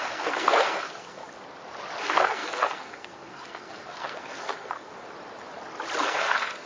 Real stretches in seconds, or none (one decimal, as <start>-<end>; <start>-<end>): 1.2-2.0; 4.9-6.0